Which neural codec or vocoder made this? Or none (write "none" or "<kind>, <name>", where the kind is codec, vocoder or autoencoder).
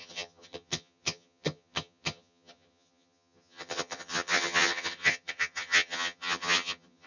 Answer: vocoder, HiFi-GAN